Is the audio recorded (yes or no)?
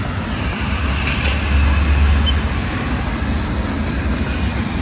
yes